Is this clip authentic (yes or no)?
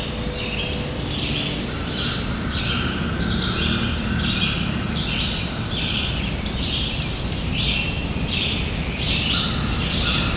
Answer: yes